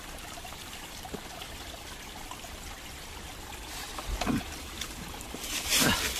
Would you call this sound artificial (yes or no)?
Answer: no